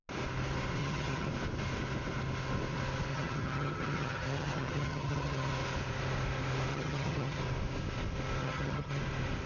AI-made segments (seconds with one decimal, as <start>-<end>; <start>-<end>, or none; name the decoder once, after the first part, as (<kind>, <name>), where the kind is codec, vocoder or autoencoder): 0.8-1.3 (vocoder, HiFi-GAN); 3.1-5.5; 6.7-7.4; 8.4-9.0